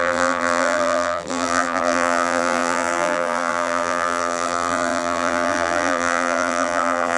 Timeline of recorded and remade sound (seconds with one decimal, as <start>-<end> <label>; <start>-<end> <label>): 0.0-7.2 remade